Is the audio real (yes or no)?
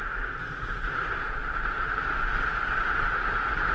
yes